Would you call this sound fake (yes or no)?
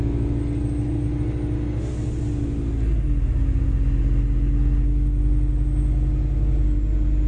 no